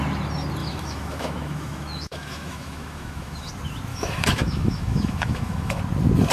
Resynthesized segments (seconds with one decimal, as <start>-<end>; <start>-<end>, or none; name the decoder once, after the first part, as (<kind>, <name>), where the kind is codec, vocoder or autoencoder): 0.6-3.5 (autoencoder, DAC-VAE); 3.9-5.8

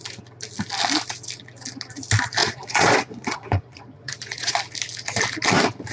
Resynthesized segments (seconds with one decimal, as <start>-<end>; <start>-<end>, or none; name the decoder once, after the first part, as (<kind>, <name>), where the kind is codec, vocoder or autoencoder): 2.4-4.5 (vocoder, Vocos)